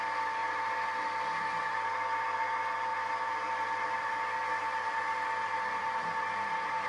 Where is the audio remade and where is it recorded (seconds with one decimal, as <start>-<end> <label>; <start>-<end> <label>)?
0.0-6.9 recorded

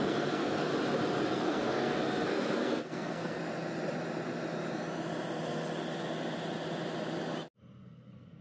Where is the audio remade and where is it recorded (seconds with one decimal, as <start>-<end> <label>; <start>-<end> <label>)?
0.0-0.7 remade; 0.7-1.3 recorded; 1.3-3.4 remade; 3.4-7.8 recorded; 7.8-8.4 remade

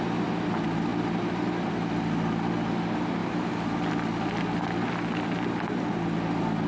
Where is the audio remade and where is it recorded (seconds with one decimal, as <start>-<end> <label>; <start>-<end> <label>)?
0.0-6.7 recorded

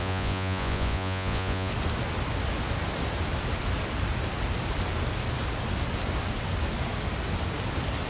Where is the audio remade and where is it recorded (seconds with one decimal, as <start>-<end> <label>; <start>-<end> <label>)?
0.0-1.7 remade; 1.7-8.1 recorded